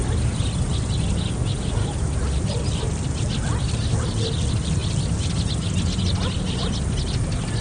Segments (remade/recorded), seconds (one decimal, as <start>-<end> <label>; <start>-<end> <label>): 0.0-7.6 recorded